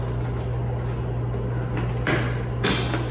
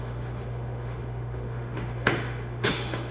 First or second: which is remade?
second